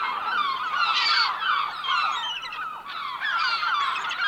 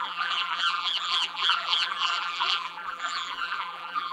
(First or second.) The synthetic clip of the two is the second